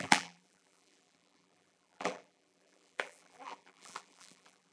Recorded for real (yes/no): no